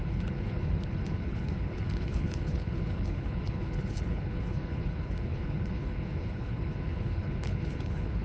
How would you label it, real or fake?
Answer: fake